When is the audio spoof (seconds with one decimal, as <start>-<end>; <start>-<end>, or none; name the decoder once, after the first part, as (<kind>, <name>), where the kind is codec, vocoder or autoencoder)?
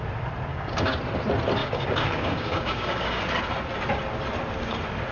0.5-1.0 (codec, DAC); 1.6-3.2